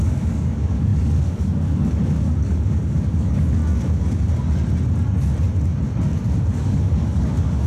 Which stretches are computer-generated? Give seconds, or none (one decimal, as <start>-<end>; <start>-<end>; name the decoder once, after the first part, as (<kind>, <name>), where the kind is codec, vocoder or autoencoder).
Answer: 0.0-3.6 (codec, DAC); 6.6-7.7